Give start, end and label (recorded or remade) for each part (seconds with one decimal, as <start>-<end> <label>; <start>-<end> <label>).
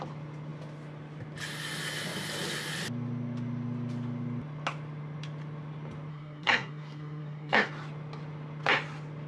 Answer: 0.0-6.1 recorded; 6.1-7.7 remade; 7.7-9.3 recorded